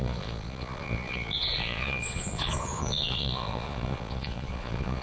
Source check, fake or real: fake